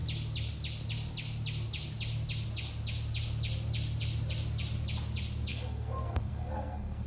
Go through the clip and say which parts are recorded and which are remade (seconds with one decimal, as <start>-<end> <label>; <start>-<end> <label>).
0.0-5.5 recorded; 5.5-7.1 remade